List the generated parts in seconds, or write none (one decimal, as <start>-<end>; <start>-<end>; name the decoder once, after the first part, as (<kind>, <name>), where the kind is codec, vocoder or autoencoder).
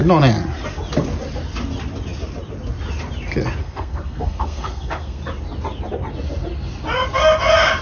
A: 3.6-5.2 (codec, SNAC)